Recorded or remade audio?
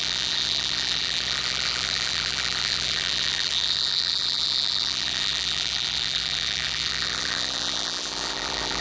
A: remade